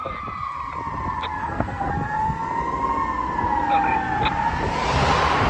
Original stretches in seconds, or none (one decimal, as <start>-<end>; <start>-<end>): 0.0-1.4; 1.9-5.5